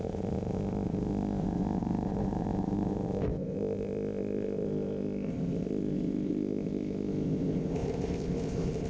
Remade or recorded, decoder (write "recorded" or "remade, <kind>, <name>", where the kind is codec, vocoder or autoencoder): remade, codec, ZipCodec